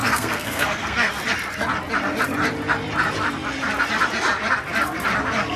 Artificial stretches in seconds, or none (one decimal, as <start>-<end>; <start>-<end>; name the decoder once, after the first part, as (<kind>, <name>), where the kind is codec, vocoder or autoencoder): 0.0-1.1 (codec, SNAC)